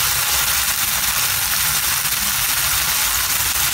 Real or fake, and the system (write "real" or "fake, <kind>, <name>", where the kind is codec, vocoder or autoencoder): real